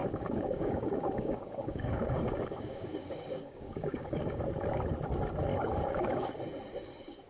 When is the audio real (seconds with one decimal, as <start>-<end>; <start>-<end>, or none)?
4.4-5.5; 6.3-7.3